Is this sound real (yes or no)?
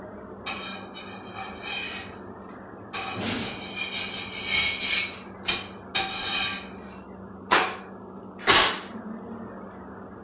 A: yes